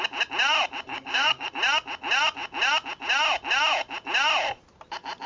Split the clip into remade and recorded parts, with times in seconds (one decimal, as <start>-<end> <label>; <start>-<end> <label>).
0.0-0.9 recorded; 0.9-1.5 remade; 1.5-5.3 recorded